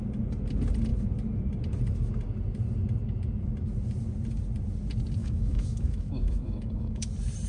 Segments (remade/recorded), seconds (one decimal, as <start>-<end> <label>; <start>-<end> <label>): 0.0-5.2 recorded; 5.2-7.1 remade; 7.1-7.5 recorded